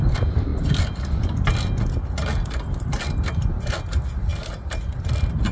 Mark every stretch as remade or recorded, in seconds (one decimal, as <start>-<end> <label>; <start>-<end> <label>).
0.0-5.5 recorded